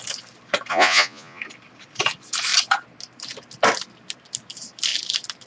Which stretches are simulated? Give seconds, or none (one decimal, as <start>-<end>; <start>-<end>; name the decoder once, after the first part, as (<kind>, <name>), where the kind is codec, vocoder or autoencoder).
0.7-1.4 (vocoder, Vocos)